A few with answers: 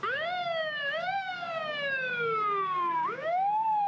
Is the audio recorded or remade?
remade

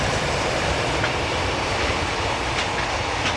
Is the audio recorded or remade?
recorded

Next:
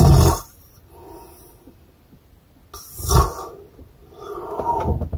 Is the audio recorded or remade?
recorded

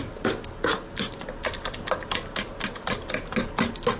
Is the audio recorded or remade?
recorded